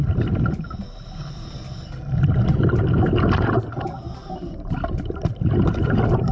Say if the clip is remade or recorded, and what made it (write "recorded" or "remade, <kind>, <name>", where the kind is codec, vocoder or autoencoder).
recorded